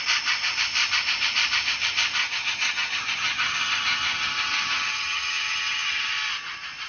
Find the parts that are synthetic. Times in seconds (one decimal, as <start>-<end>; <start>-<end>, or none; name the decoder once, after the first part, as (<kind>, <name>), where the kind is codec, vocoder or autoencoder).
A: 2.2-6.1 (vocoder, HiFi-GAN)